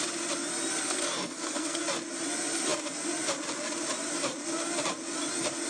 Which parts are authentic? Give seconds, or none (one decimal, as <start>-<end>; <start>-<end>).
0.0-0.8; 1.8-5.7